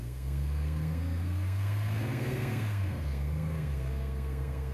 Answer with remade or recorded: remade